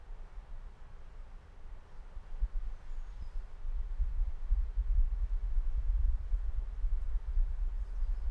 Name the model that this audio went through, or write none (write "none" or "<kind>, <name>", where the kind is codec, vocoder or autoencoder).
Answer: none